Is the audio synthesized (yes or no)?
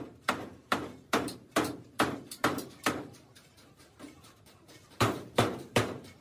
yes